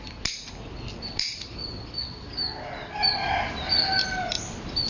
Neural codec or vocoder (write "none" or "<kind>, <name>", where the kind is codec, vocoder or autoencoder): none